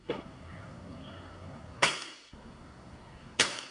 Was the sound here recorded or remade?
remade